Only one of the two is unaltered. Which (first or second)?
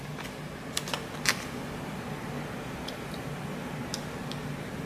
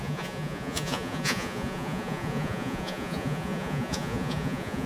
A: first